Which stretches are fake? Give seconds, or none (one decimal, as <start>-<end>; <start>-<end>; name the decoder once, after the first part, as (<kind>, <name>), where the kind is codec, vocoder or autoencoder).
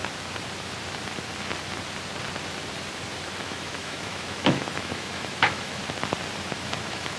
3.4-5.8 (autoencoder, DAC-VAE); 6.5-7.2